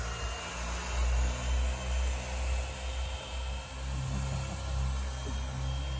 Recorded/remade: recorded